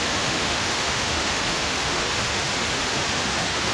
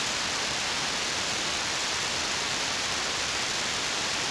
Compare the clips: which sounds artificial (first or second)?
first